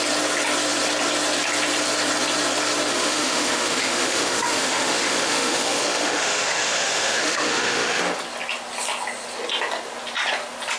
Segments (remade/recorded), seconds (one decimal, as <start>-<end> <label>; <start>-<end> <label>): 0.0-2.9 recorded; 2.9-8.0 remade; 8.0-10.8 recorded